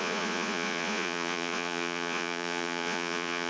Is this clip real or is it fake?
fake